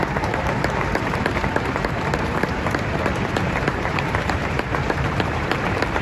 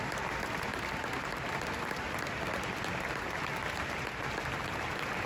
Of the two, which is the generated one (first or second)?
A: first